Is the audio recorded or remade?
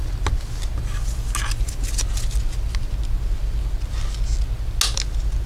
recorded